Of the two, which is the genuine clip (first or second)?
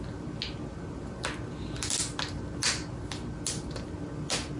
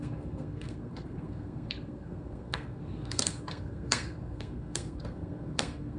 first